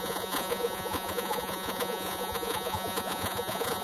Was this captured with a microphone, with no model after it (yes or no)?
no